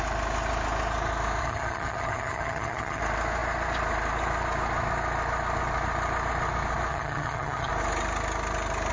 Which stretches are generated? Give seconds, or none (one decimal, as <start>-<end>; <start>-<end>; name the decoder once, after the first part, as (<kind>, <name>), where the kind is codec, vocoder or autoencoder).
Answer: 1.4-3.0 (vocoder, HiFi-GAN); 6.9-7.7